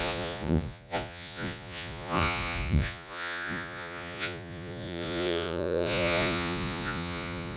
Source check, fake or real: fake